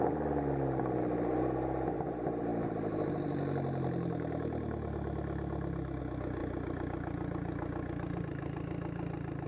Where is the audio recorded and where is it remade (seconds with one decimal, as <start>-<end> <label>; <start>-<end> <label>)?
0.0-9.5 recorded